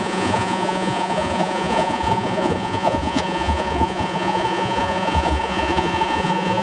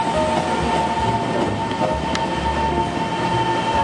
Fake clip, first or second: first